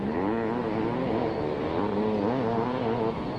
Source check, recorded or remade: recorded